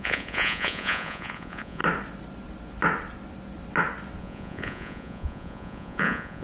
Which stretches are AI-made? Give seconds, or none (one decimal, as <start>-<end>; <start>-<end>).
0.0-1.8; 4.2-6.4